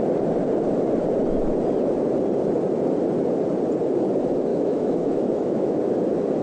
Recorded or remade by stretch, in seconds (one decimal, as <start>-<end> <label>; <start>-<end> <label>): 0.0-4.5 recorded; 4.5-5.8 remade; 5.8-6.4 recorded